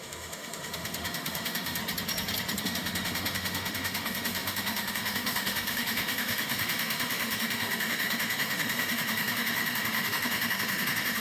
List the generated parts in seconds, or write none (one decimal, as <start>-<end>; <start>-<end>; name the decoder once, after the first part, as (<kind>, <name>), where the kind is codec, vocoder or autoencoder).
0.0-1.8 (autoencoder, DAC-VAE); 2.6-11.2